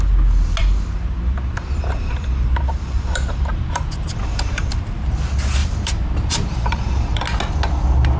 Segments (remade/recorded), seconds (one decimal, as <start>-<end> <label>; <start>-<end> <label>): 0.0-0.6 recorded; 0.6-5.1 remade; 5.1-5.6 recorded; 5.6-7.2 remade; 7.2-8.2 recorded